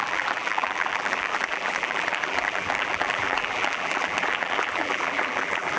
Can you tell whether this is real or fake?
fake